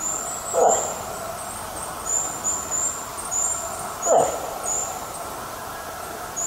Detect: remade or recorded recorded